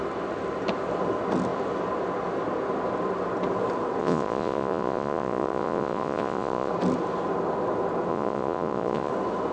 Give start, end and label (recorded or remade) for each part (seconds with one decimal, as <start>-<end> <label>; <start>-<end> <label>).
0.0-4.0 recorded; 4.0-6.7 remade; 6.7-8.1 recorded; 8.1-9.1 remade; 9.1-9.5 recorded